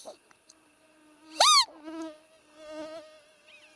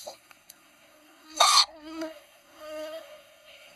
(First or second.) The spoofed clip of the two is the second